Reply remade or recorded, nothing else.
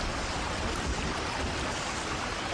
recorded